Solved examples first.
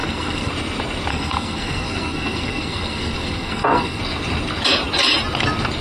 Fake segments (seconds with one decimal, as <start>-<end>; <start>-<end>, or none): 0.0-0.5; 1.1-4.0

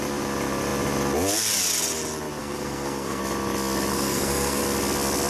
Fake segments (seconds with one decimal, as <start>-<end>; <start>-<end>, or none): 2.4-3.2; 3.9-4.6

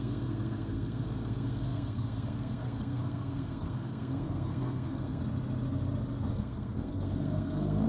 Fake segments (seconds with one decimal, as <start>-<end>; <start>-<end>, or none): 0.0-5.2; 6.3-7.9

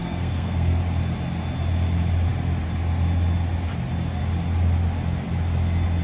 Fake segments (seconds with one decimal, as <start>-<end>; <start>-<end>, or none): 0.0-0.8

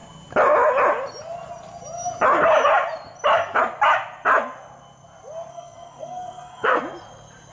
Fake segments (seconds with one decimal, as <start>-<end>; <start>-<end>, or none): 5.5-6.8